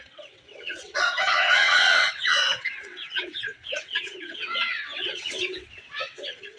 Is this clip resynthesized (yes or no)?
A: yes